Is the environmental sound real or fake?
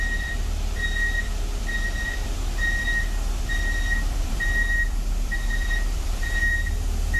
fake